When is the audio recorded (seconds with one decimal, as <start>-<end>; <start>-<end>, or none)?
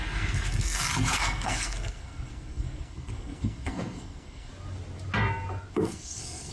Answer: 4.5-5.7